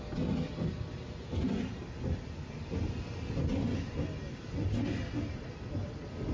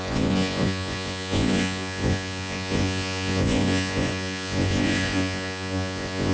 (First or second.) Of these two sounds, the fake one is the second